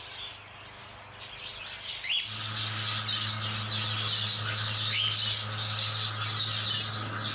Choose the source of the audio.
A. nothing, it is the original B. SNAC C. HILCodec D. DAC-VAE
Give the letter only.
A